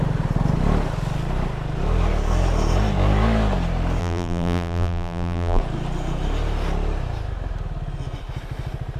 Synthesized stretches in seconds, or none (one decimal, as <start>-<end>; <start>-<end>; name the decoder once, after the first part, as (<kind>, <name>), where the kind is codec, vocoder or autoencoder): 4.0-5.6 (vocoder, BigVGAN v2)